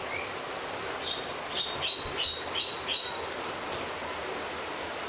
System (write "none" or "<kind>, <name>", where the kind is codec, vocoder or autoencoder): none